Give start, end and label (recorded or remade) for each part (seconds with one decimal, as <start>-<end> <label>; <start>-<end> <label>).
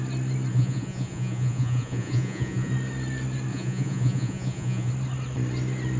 0.0-0.5 recorded; 0.5-2.7 remade; 2.7-3.5 recorded; 3.5-4.9 remade; 4.9-6.0 recorded